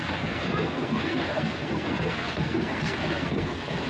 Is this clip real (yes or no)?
no